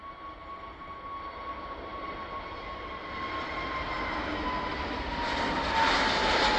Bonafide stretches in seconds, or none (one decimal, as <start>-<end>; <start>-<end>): 0.0-4.7; 5.5-6.6